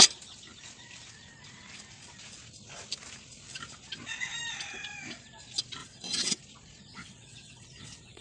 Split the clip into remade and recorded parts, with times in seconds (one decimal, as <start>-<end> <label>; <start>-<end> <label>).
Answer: 0.0-5.8 recorded; 5.8-6.4 remade; 6.4-6.9 recorded; 6.9-8.2 remade